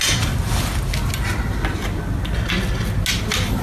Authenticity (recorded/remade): recorded